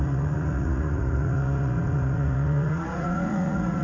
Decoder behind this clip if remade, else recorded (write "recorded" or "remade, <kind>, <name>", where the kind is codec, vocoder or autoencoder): remade, vocoder, Vocos